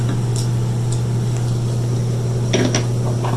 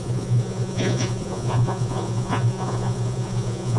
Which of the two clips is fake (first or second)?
second